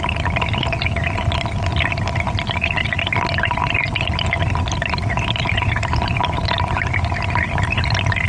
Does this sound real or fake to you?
real